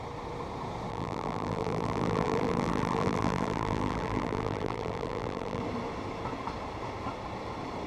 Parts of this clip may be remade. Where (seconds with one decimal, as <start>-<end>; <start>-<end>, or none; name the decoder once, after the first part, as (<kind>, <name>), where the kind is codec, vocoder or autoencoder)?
0.9-5.6 (vocoder, BigVGAN v2)